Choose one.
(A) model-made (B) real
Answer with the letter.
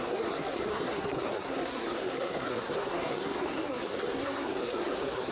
A